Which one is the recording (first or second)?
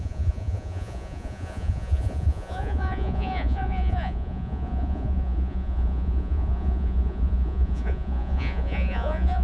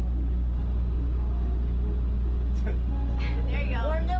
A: second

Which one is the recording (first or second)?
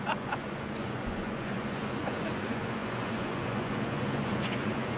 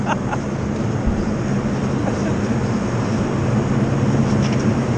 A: second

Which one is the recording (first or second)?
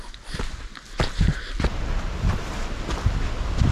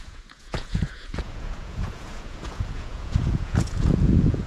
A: first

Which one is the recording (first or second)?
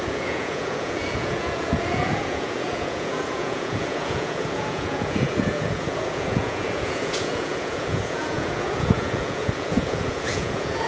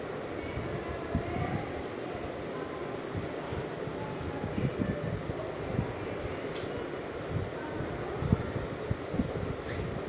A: second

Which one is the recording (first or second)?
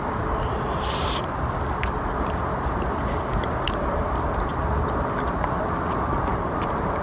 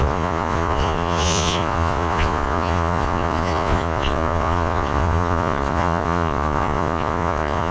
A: first